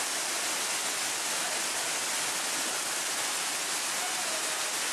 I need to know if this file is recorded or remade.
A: recorded